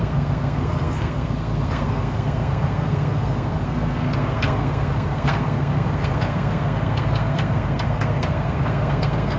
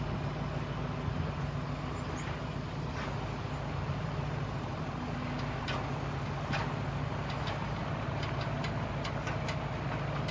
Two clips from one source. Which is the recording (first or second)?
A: second